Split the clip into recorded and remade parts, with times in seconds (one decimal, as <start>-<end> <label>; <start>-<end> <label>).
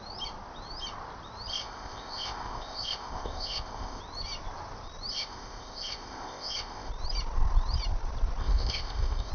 0.0-1.5 recorded; 1.5-4.0 remade; 4.0-5.1 recorded; 5.1-6.9 remade; 6.9-8.4 recorded; 8.4-9.3 remade